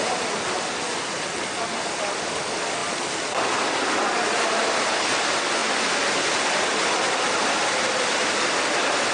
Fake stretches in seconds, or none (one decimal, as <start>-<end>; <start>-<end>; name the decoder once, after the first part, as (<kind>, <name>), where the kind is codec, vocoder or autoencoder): none